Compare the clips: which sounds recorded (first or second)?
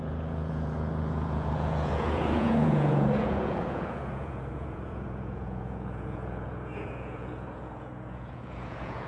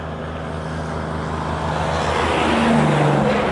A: second